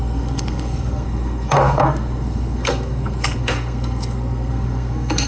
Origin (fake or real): fake